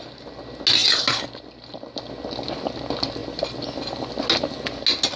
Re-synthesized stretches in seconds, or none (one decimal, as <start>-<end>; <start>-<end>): none